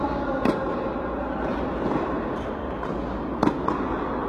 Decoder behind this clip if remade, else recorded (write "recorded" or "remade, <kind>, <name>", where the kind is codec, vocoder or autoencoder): recorded